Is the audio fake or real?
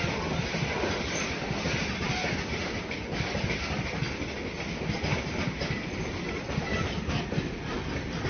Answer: real